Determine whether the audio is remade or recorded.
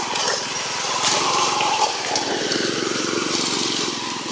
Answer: recorded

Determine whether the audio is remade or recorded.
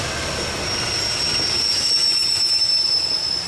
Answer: recorded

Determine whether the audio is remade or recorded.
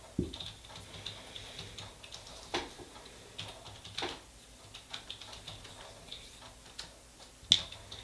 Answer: recorded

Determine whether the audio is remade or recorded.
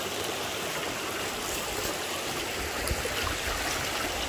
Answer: recorded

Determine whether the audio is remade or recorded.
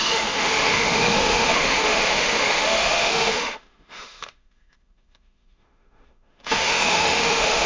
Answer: remade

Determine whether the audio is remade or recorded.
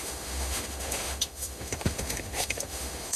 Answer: remade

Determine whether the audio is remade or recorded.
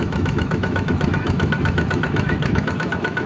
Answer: remade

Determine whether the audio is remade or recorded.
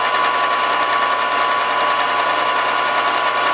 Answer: recorded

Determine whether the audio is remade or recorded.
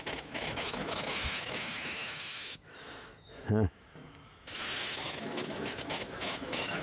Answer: remade